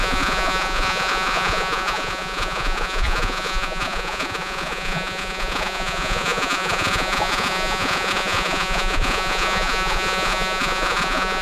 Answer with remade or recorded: remade